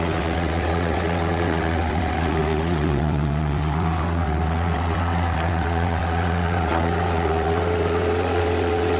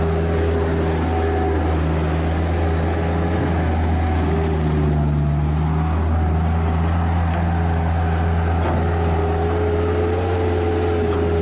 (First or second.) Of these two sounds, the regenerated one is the first